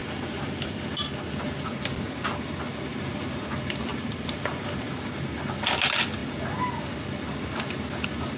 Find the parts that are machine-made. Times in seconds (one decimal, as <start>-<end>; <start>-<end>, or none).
0.0-0.8; 2.9-3.4; 3.9-4.9